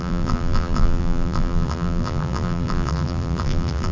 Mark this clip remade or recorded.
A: remade